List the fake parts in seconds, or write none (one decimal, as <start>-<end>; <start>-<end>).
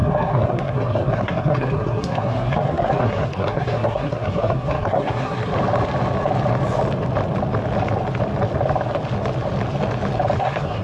0.0-5.5; 10.4-10.8